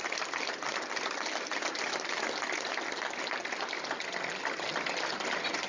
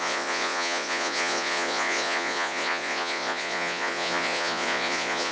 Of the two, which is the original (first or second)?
first